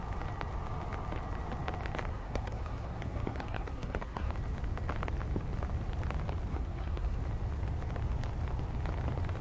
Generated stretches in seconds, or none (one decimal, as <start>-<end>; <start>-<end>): 2.1-4.3; 6.5-7.2